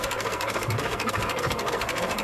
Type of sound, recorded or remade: remade